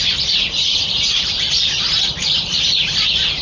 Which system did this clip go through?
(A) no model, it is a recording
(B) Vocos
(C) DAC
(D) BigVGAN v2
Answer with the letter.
A